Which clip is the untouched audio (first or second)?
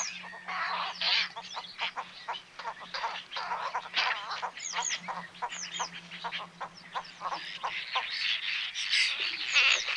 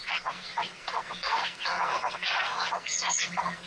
first